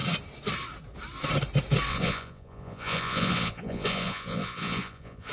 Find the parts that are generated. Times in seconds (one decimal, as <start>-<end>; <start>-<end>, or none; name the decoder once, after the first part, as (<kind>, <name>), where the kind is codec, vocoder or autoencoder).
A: 1.9-5.3 (vocoder, Vocos)